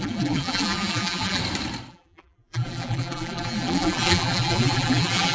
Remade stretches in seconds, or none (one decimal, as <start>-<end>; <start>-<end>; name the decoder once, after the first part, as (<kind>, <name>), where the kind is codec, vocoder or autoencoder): 0.0-1.4 (vocoder, BigVGAN v2); 1.9-5.3